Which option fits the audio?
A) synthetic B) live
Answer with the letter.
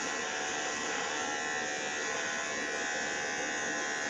B